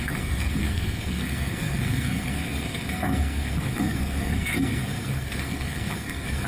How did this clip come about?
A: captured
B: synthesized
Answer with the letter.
B